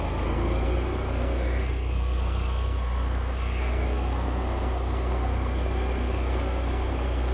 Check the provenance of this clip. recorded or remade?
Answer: remade